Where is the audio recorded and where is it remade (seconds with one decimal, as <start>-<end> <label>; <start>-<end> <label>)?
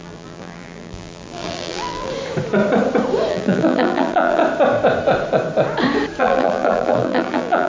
0.0-2.1 remade; 2.1-3.3 recorded; 3.3-4.4 remade; 4.4-6.2 recorded; 6.2-7.7 remade